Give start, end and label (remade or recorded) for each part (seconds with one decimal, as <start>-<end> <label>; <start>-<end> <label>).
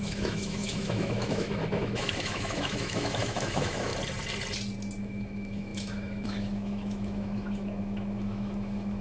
0.0-3.9 remade; 3.9-5.0 recorded; 5.0-9.0 remade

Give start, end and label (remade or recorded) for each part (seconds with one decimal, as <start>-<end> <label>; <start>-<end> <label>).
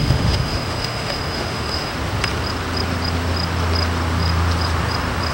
0.0-1.9 remade; 1.9-5.3 recorded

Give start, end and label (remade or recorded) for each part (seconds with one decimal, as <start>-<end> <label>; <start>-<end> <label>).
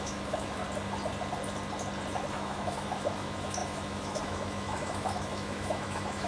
0.0-0.6 remade; 0.6-2.3 recorded; 2.3-6.3 remade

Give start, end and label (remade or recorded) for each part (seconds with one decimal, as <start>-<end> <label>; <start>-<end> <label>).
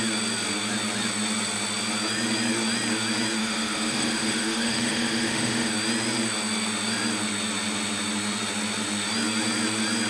0.0-3.4 recorded; 3.4-5.7 remade; 5.7-10.1 recorded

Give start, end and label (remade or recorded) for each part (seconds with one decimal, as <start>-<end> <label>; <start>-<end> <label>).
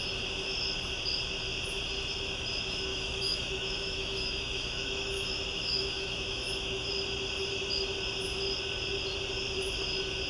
0.0-2.9 recorded; 2.9-6.9 remade; 6.9-10.3 recorded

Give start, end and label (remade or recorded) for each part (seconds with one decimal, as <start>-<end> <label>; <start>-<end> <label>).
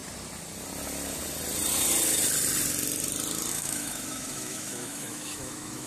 0.0-3.5 recorded; 3.5-5.9 remade